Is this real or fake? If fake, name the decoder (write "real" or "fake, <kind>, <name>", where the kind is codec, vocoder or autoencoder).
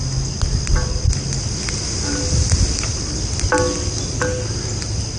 real